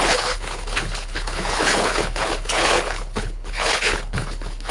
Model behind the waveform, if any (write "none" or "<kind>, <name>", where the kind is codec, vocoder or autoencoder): codec, HILCodec